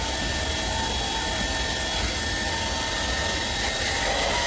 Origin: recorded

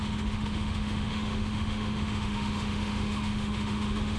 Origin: remade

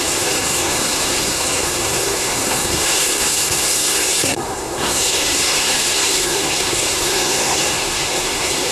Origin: remade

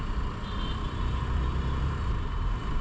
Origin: remade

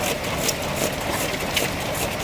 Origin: recorded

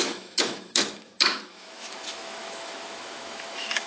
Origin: remade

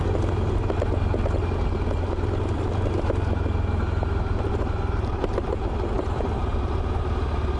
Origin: recorded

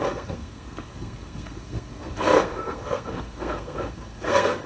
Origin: remade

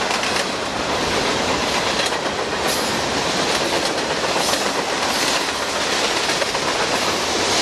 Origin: recorded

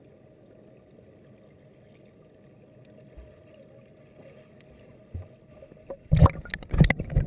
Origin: recorded